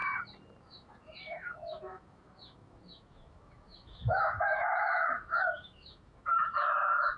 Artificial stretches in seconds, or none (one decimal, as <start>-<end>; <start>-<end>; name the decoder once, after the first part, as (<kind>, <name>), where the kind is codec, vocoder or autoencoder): 0.6-7.2 (autoencoder, DAC-VAE)